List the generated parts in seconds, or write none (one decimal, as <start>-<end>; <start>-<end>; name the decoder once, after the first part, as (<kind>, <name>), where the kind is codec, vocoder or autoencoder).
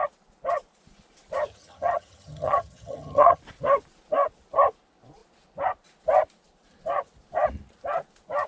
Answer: 1.5-3.4 (vocoder, HiFi-GAN)